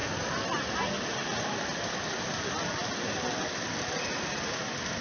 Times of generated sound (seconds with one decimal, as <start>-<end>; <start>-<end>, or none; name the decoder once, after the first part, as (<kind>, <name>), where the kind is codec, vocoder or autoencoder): none